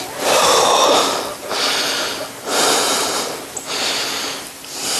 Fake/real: real